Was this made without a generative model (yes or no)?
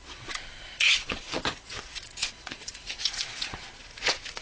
no